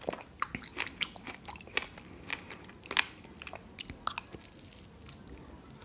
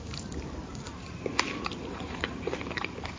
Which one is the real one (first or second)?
first